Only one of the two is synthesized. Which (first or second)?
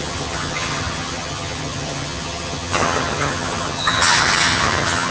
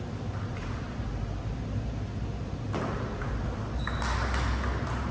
first